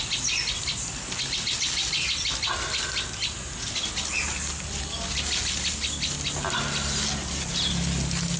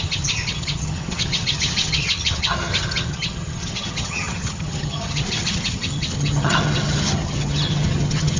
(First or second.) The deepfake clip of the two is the second